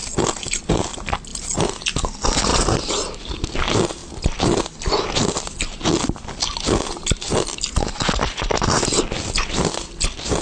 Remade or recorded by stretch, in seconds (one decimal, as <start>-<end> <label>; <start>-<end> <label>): 0.0-10.4 recorded